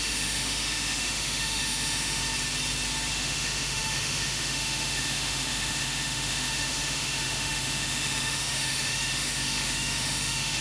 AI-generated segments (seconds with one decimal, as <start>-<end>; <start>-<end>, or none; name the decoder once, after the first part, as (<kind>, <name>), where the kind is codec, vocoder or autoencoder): 0.0-2.2 (autoencoder, DAC-VAE); 3.1-10.6